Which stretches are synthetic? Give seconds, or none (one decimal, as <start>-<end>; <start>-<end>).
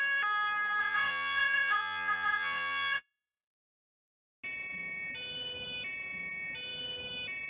0.8-4.1